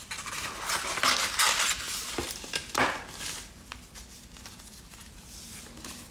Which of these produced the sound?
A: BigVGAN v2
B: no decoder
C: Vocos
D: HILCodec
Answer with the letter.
B